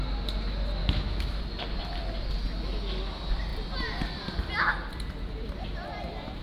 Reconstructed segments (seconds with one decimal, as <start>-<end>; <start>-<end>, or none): 0.8-1.4